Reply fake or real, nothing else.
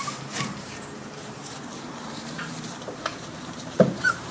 fake